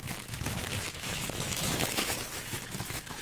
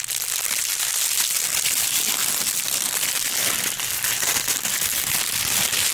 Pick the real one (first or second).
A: second